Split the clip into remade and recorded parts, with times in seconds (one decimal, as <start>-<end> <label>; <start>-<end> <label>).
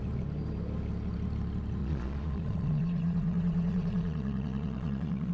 0.0-1.8 recorded; 1.8-5.3 remade